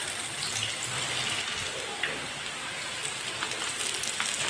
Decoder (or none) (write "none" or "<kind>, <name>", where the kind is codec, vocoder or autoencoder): none